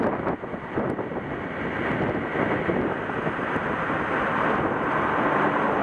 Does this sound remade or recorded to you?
recorded